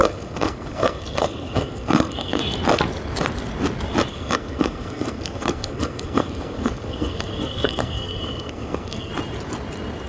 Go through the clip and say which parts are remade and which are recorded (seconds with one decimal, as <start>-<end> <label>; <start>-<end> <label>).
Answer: 0.0-2.4 remade; 2.4-4.1 recorded; 4.1-9.1 remade; 9.1-10.1 recorded